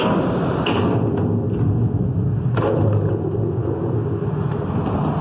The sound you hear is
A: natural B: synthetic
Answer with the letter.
A